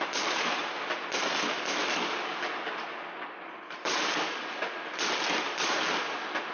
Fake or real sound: real